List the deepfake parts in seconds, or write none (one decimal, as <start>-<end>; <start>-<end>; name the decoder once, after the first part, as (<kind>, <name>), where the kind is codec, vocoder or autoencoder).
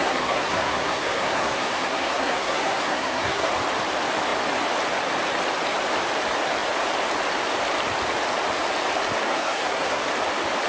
0.0-3.5 (codec, SNAC); 9.3-10.0